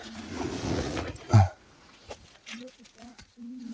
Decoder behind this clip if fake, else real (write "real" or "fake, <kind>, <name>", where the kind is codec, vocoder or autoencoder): fake, vocoder, Vocos